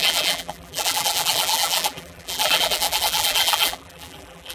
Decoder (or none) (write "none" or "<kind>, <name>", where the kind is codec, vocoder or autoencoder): vocoder, BigVGAN v2